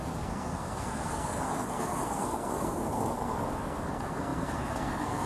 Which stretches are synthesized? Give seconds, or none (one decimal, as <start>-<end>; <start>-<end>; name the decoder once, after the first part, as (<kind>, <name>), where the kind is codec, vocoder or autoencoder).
0.0-5.3 (codec, SNAC)